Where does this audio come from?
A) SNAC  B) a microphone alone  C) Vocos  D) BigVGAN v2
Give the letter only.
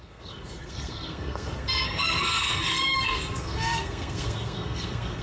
A